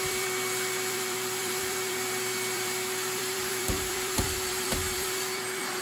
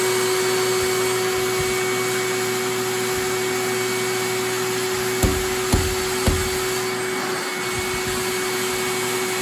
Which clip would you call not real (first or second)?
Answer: first